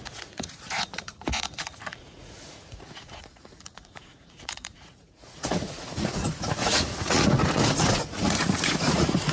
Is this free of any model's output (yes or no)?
no